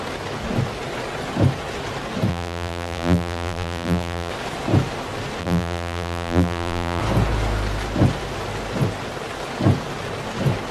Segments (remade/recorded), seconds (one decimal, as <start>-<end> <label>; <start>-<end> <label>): 0.0-2.3 recorded; 2.3-4.3 remade; 4.3-5.4 recorded; 5.4-7.0 remade; 7.0-10.7 recorded